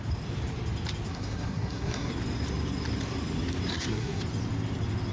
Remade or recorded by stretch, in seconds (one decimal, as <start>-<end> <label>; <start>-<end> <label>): 0.0-1.1 recorded; 1.1-2.1 remade; 2.1-3.7 recorded; 3.7-4.2 remade; 4.2-5.1 recorded